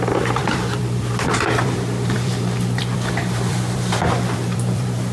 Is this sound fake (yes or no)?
yes